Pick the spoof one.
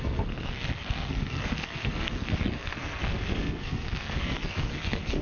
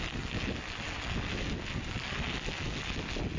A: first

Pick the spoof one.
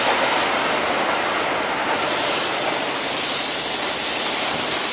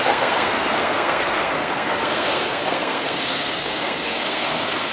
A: second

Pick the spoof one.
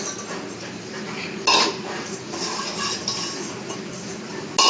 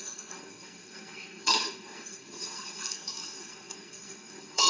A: second